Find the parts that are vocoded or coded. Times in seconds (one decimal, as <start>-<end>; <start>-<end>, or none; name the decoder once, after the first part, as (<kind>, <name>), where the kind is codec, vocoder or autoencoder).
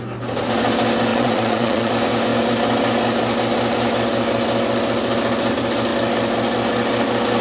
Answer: 1.1-1.9 (vocoder, Vocos)